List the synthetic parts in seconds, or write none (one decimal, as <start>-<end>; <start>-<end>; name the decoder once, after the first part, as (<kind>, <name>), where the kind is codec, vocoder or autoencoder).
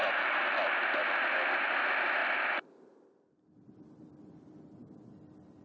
0.0-1.3 (vocoder, BigVGAN v2); 2.2-4.2